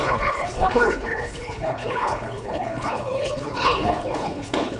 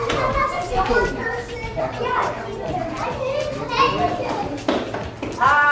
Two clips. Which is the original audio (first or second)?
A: second